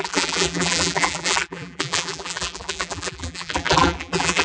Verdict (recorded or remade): remade